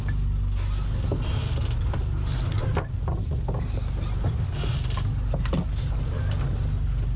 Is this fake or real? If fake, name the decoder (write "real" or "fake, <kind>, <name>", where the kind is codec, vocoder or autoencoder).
real